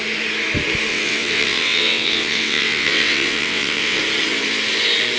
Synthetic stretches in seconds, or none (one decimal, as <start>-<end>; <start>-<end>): 0.9-4.0